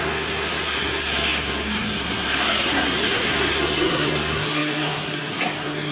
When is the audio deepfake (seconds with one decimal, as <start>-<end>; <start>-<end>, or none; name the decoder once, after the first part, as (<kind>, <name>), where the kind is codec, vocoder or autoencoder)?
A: 0.0-5.9 (codec, SNAC)